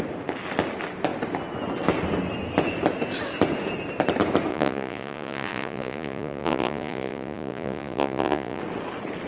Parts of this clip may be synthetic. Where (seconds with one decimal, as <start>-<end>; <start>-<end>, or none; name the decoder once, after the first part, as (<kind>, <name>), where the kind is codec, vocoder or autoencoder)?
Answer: 4.5-8.6 (vocoder, Vocos)